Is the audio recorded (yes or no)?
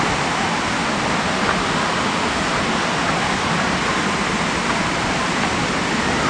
yes